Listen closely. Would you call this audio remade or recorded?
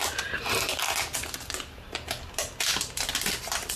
recorded